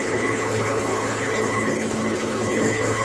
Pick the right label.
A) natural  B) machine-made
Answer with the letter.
B